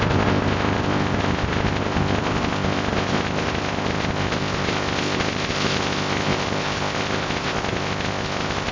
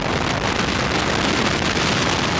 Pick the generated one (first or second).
first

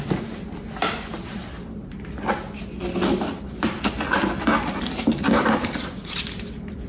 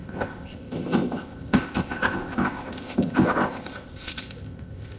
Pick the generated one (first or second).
second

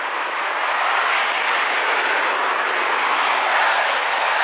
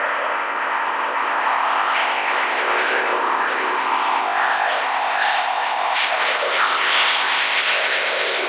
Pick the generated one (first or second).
second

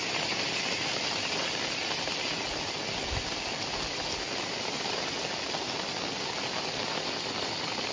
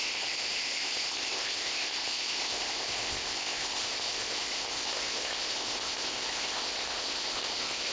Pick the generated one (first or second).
second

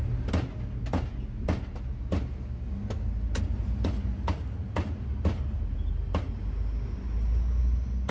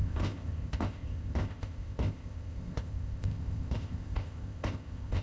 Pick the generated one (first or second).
second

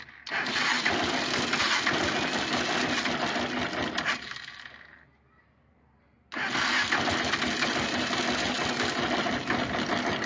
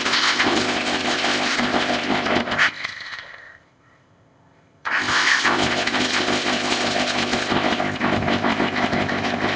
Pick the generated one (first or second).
second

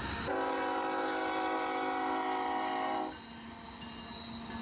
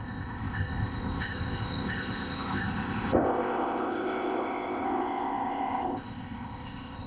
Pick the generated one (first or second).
second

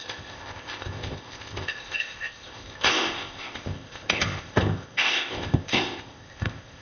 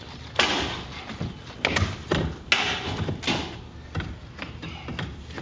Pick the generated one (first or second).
first